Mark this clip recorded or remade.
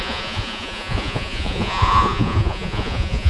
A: remade